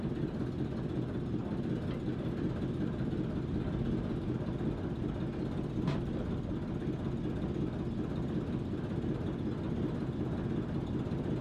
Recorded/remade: recorded